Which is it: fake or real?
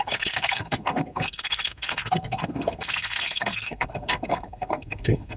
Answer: fake